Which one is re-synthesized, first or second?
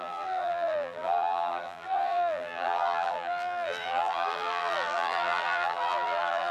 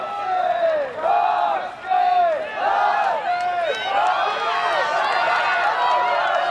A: first